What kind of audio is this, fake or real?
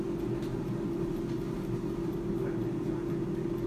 real